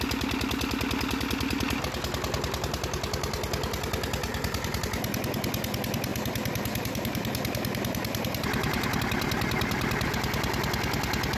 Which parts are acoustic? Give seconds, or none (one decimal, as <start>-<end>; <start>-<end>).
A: 0.0-4.3; 4.8-6.1; 9.0-11.4